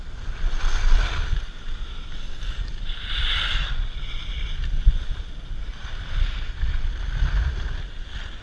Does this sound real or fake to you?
real